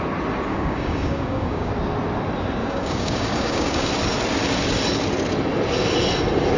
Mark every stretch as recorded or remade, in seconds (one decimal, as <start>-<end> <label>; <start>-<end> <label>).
0.0-0.5 recorded; 0.5-1.7 remade; 1.7-2.6 recorded; 2.6-3.9 remade; 3.9-6.6 recorded